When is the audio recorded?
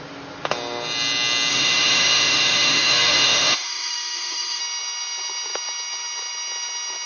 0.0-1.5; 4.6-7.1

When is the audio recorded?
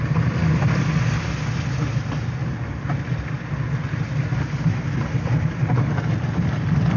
0.0-7.0